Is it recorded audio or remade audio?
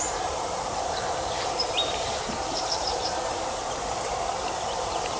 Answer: remade